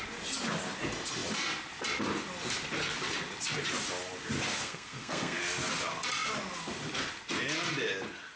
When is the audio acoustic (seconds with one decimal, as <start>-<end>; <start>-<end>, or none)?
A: 0.0-4.5; 5.4-8.4